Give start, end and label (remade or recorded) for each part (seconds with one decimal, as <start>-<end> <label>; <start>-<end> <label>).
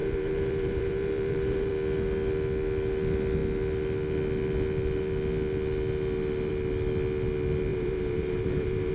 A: 0.0-1.7 remade; 1.7-7.7 recorded; 7.7-8.9 remade